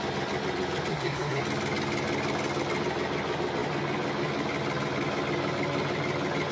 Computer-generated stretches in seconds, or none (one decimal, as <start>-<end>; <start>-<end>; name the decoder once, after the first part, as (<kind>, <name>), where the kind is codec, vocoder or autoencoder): 0.9-1.4 (codec, SNAC)